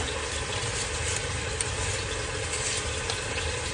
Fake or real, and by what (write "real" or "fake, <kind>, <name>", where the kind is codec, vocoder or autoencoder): real